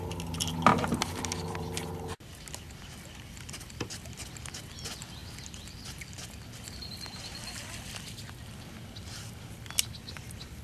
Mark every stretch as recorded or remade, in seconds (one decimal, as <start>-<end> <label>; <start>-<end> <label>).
0.0-0.7 recorded; 0.7-2.4 remade; 2.4-10.6 recorded

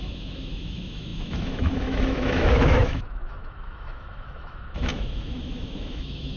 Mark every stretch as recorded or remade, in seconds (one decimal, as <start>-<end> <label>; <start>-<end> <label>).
0.0-6.4 remade

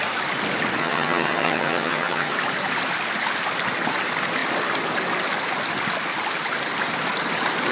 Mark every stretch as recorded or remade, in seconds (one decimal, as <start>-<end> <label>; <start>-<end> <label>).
0.0-0.8 recorded; 0.8-2.3 remade; 2.3-7.7 recorded

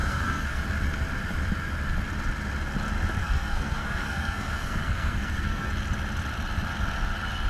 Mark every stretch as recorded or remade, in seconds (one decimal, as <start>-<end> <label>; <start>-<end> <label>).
0.0-0.6 remade; 0.6-3.2 recorded; 3.2-5.7 remade; 5.7-7.5 recorded

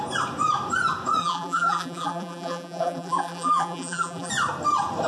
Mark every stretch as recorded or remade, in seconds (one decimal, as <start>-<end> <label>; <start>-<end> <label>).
0.0-1.2 recorded; 1.2-4.3 remade; 4.3-5.1 recorded

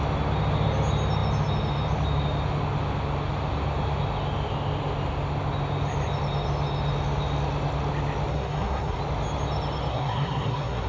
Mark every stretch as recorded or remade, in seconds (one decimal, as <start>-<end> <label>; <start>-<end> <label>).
0.0-8.3 recorded; 8.3-9.0 remade; 9.0-9.9 recorded; 9.9-10.9 remade

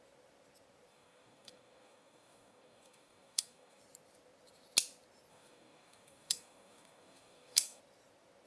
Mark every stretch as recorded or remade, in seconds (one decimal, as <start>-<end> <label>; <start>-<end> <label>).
0.0-0.9 recorded; 0.9-3.8 remade; 3.8-5.3 recorded; 5.3-7.8 remade; 7.8-8.5 recorded